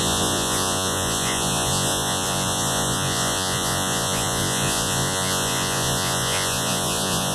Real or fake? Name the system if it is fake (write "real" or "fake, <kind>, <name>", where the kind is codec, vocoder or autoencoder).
fake, vocoder, Vocos